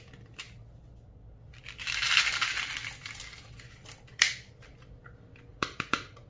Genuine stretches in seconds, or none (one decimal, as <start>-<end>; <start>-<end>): 0.0-5.5